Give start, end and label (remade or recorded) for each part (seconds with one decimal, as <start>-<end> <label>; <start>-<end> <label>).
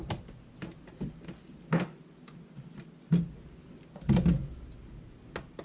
0.0-5.6 recorded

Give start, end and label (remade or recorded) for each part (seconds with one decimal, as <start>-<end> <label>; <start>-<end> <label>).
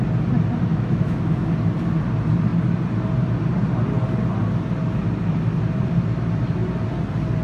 0.0-0.7 recorded; 0.7-1.5 remade; 1.5-7.4 recorded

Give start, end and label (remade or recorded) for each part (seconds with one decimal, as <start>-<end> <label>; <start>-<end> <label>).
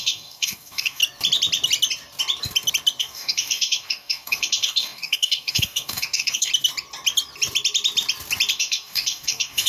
0.0-1.0 remade; 1.0-3.0 recorded; 3.0-6.5 remade; 6.5-8.5 recorded; 8.5-9.7 remade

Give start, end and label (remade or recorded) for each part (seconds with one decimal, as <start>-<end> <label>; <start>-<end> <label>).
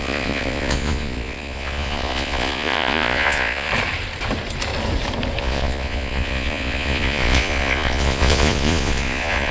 0.0-3.7 remade; 3.7-5.4 recorded; 5.4-9.5 remade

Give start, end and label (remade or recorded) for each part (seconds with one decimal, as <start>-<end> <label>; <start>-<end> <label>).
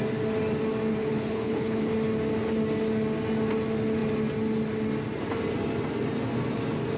0.0-1.0 recorded; 1.0-1.9 remade; 1.9-7.0 recorded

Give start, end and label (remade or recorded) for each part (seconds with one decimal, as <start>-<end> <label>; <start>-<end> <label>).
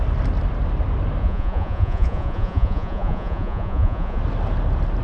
0.0-1.2 recorded; 1.2-4.2 remade; 4.2-5.0 recorded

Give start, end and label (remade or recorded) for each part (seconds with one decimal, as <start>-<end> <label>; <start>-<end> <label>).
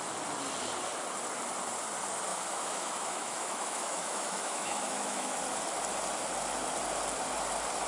0.0-2.3 recorded; 2.3-5.4 remade; 5.4-7.9 recorded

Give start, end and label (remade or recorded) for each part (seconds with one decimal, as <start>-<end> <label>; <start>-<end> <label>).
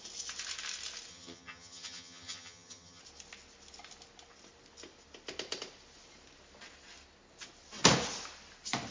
0.0-1.1 recorded; 1.1-3.0 remade; 3.0-8.9 recorded